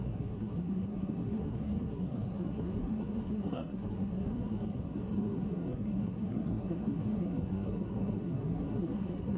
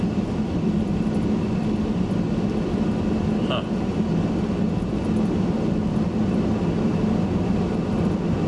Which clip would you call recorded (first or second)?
second